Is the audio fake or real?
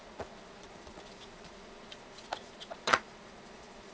fake